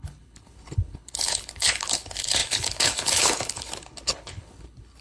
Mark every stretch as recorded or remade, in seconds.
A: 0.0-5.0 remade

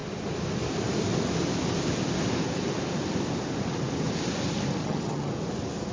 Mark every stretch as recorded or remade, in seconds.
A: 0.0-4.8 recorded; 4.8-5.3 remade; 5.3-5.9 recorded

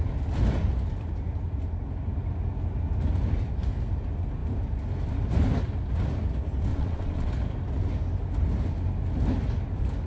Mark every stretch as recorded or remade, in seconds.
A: 0.0-6.7 recorded; 6.7-7.3 remade; 7.3-10.1 recorded

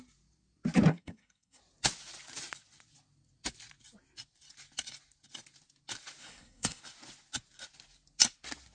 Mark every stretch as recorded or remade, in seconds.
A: 0.0-0.9 recorded; 0.9-1.6 remade; 1.6-6.2 recorded; 6.2-6.8 remade; 6.8-8.7 recorded

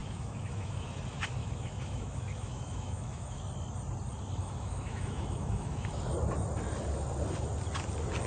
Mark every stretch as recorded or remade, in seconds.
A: 0.0-0.9 remade; 0.9-1.4 recorded; 1.4-3.4 remade; 3.4-4.4 recorded; 4.4-6.0 remade; 6.0-8.3 recorded

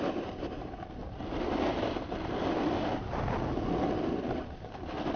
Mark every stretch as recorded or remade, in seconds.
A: 0.0-5.2 recorded